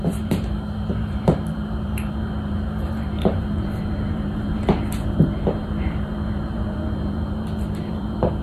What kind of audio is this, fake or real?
fake